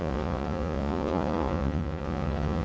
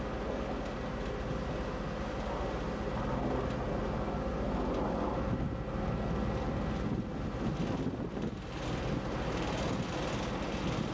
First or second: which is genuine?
second